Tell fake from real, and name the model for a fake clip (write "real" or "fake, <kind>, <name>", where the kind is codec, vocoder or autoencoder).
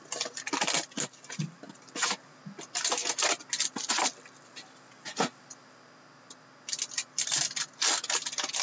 real